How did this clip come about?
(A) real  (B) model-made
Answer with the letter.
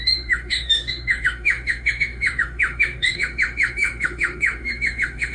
B